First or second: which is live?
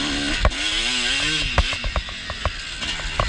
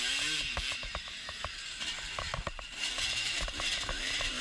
first